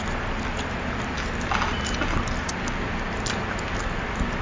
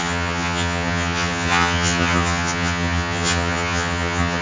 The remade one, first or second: second